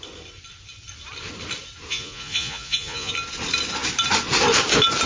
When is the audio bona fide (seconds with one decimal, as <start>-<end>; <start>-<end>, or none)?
0.0-1.9; 3.1-5.1